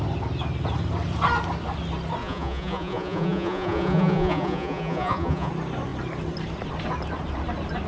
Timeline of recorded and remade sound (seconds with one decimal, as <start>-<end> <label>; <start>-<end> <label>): 0.0-2.2 recorded; 2.2-5.5 remade; 5.5-7.9 recorded